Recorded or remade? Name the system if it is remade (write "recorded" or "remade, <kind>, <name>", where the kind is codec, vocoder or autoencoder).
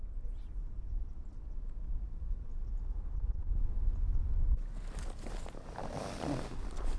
recorded